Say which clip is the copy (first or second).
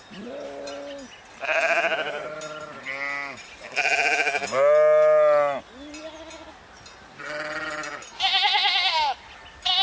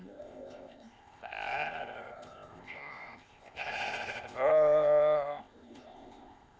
second